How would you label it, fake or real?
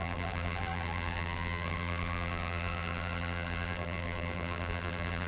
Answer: fake